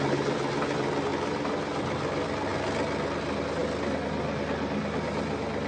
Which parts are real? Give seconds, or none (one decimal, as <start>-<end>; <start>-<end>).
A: 0.0-5.7